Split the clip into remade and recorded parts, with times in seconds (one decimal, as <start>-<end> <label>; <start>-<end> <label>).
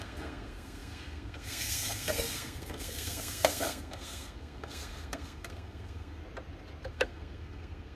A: 0.0-6.2 remade; 6.2-6.9 recorded; 6.9-8.0 remade